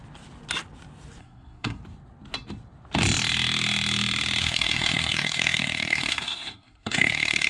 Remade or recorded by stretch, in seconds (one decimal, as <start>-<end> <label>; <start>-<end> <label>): 0.0-1.2 recorded; 1.2-1.8 remade; 1.8-4.4 recorded; 4.4-7.5 remade